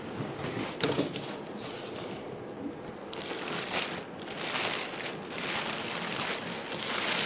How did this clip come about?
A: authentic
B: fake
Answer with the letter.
A